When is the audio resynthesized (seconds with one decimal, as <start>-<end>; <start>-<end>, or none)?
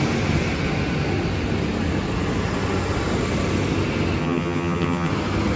4.2-5.1